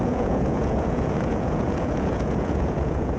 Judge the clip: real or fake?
fake